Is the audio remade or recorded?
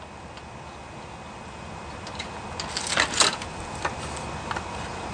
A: recorded